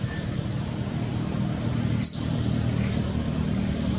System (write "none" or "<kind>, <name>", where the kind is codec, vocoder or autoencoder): none